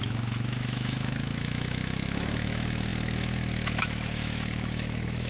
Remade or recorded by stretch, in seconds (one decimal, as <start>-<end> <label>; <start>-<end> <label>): 0.0-5.3 remade

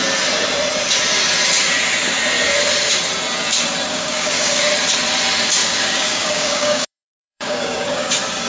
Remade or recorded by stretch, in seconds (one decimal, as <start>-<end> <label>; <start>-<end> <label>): 0.0-3.9 recorded; 3.9-4.6 remade; 4.6-5.6 recorded; 5.6-8.1 remade; 8.1-8.5 recorded